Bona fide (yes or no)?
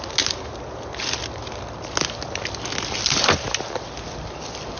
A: yes